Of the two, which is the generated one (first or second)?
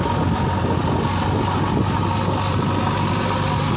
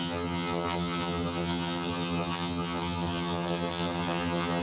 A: second